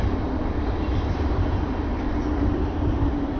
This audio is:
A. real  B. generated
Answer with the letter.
A